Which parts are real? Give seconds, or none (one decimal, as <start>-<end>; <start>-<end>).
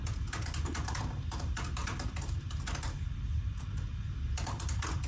0.0-1.8; 2.6-5.1